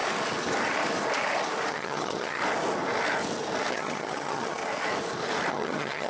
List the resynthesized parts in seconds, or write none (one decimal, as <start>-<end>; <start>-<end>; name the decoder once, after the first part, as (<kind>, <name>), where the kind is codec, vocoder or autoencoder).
1.7-2.4 (vocoder, HiFi-GAN); 3.7-4.6; 5.5-6.1